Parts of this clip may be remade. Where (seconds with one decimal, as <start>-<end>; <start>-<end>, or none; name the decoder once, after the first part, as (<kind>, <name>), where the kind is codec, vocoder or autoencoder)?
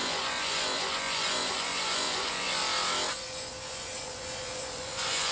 0.0-2.6 (vocoder, Vocos); 3.1-5.3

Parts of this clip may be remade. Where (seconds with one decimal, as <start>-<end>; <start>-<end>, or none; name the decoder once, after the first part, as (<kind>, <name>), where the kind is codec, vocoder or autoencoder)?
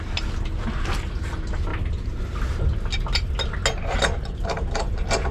none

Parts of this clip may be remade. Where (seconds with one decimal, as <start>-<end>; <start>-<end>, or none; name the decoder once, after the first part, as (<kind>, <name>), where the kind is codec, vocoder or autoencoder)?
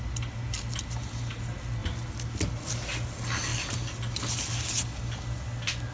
none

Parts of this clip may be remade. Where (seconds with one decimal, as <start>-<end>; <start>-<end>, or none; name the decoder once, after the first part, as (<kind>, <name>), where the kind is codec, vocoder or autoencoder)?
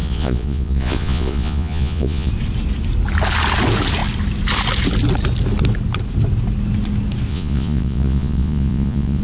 0.0-2.3 (vocoder, Vocos); 7.3-9.2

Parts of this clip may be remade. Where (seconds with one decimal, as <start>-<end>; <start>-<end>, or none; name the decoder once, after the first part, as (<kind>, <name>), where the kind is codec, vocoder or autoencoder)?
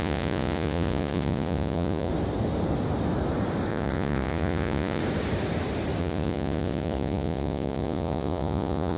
0.0-2.1 (vocoder, Vocos); 3.7-5.0; 6.0-9.0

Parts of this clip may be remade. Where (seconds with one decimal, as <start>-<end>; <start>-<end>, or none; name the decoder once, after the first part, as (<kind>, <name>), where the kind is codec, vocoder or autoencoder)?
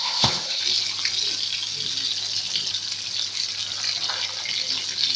0.0-0.6 (codec, ZipCodec)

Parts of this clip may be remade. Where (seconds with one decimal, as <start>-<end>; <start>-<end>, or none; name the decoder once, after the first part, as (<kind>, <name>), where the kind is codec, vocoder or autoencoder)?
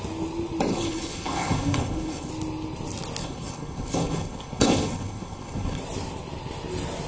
0.7-2.3 (codec, HILCodec); 3.2-5.8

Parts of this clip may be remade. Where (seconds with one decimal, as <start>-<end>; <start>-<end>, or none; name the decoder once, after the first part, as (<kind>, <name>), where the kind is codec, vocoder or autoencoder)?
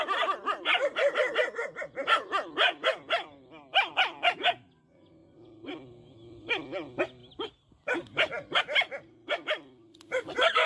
none